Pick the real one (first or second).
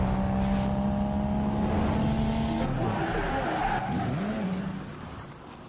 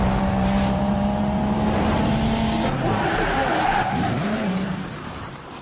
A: first